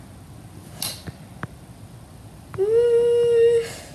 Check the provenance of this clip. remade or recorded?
recorded